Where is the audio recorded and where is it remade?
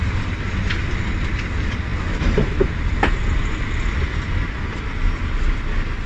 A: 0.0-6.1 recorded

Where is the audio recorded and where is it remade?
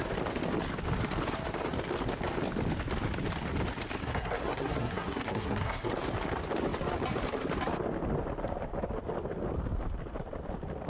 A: 0.0-4.0 recorded; 4.0-5.9 remade; 5.9-10.9 recorded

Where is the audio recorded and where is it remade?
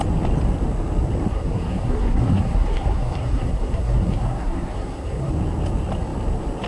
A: 0.0-1.3 recorded; 1.3-5.3 remade; 5.3-6.7 recorded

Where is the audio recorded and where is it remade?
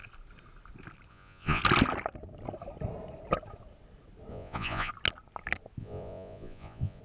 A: 0.0-1.1 recorded; 1.1-1.6 remade; 1.6-4.3 recorded; 4.3-4.9 remade; 4.9-5.8 recorded; 5.8-7.0 remade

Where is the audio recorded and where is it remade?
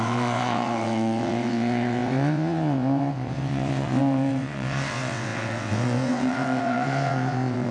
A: 0.0-7.7 remade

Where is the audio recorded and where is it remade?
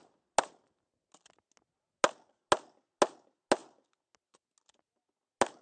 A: 0.0-5.6 recorded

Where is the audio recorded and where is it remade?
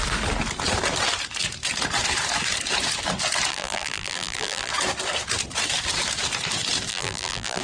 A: 0.0-3.5 recorded; 3.5-4.7 remade; 4.7-6.9 recorded; 6.9-7.6 remade